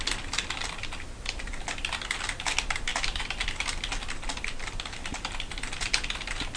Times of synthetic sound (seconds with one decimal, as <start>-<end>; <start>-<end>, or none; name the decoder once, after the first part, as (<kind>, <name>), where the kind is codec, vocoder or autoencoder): none